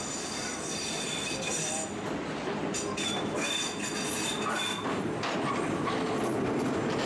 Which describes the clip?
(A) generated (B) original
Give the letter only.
B